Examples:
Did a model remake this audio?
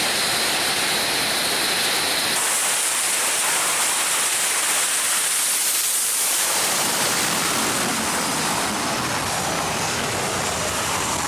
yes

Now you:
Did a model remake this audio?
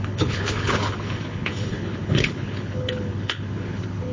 yes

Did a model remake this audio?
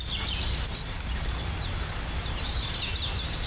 no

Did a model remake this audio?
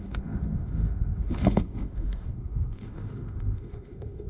yes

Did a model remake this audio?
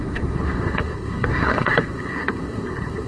yes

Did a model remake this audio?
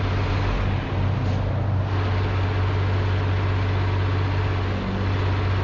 no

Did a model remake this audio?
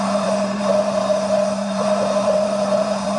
yes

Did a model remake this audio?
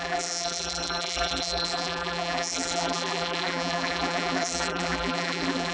yes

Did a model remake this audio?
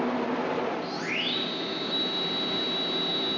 no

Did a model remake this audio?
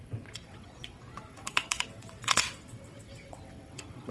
yes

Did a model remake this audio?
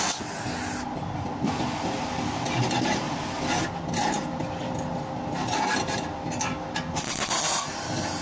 no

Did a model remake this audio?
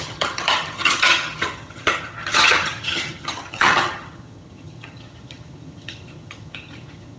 yes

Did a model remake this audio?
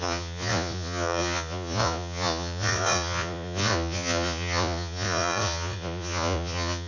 yes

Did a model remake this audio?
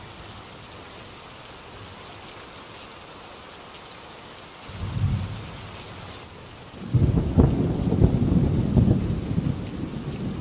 no